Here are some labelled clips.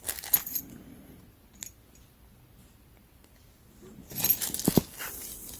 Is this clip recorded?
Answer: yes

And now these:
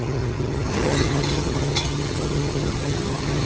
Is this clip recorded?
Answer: no